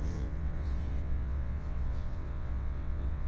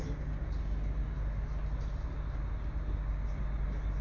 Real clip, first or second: second